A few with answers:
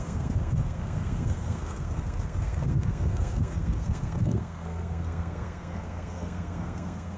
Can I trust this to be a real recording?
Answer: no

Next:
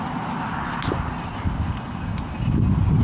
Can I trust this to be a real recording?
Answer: yes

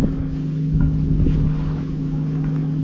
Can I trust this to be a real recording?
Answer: no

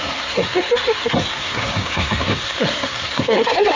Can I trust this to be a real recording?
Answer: no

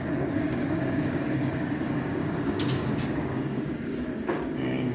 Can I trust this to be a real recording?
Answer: no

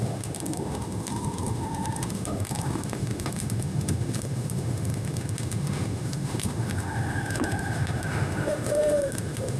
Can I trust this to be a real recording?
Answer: no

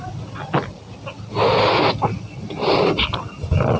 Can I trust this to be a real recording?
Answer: yes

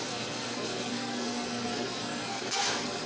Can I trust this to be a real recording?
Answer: no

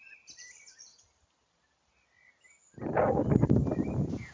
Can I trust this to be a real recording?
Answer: yes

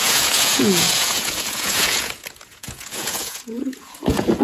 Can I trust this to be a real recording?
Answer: no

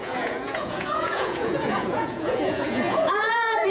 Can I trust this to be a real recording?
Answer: no